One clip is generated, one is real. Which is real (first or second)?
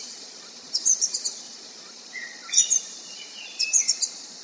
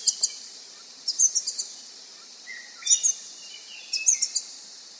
second